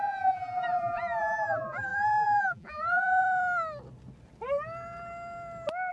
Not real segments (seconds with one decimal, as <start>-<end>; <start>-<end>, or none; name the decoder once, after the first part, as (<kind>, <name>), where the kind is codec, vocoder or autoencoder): 0.0-3.2 (vocoder, BigVGAN v2)